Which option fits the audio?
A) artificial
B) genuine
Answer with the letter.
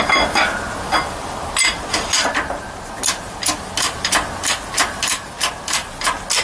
B